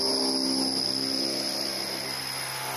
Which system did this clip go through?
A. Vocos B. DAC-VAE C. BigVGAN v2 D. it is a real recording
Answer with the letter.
D